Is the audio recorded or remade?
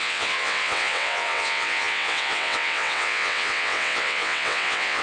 remade